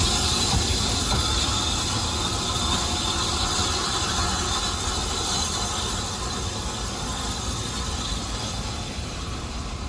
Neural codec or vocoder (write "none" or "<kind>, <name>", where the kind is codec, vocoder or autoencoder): none